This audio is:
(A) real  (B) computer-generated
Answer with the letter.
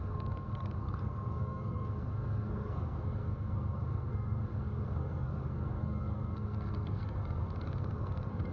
B